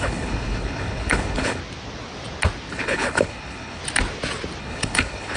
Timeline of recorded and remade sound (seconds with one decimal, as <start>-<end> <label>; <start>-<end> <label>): 0.0-1.6 remade; 1.6-2.7 recorded; 2.7-3.8 remade; 3.8-4.6 recorded; 4.6-5.4 remade